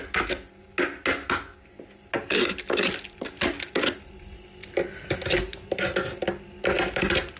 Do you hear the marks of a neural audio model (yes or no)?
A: no